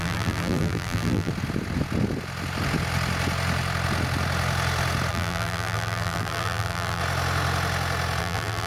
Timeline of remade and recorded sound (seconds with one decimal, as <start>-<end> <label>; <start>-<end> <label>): 0.0-1.3 remade; 1.3-5.1 recorded; 5.1-7.0 remade; 7.0-8.2 recorded; 8.2-8.7 remade